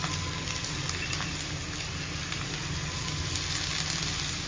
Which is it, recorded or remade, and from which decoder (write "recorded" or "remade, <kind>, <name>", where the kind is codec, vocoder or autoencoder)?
recorded